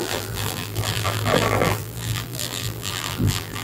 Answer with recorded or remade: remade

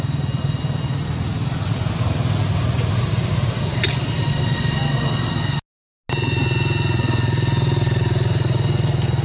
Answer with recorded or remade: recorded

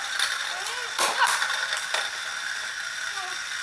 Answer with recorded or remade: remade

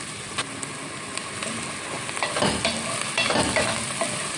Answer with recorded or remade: recorded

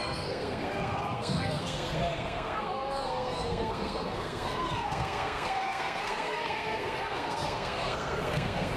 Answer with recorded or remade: remade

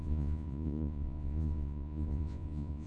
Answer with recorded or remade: remade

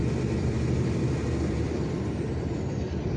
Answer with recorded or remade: remade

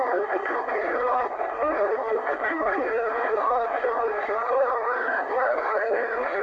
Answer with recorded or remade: remade